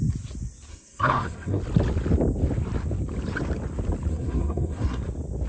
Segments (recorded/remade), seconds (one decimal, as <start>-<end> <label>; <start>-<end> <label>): 0.0-0.7 recorded; 0.7-1.6 remade; 1.6-4.1 recorded; 4.1-5.0 remade; 5.0-5.5 recorded